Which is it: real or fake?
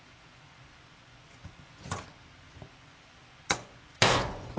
fake